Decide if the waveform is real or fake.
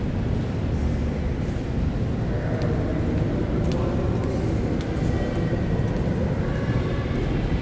real